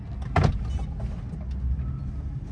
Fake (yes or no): no